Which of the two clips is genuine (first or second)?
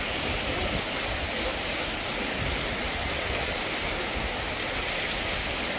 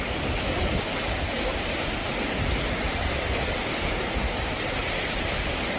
first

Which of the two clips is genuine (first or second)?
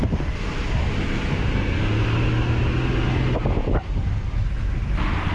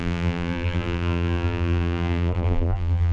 first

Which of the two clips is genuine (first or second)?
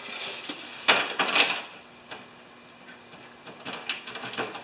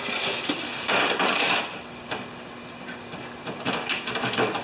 first